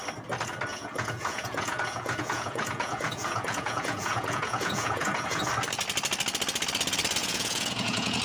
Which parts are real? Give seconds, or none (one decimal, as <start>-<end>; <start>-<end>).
0.0-0.7; 5.5-7.2